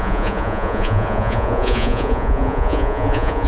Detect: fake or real fake